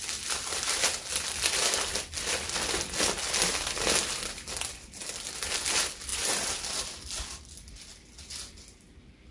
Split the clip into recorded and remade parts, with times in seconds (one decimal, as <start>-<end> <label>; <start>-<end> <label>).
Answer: 0.0-9.3 recorded